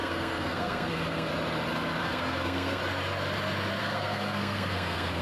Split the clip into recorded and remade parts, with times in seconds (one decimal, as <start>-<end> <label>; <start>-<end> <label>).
0.0-1.3 remade; 1.3-2.0 recorded; 2.0-2.8 remade; 2.8-3.8 recorded; 3.8-5.2 remade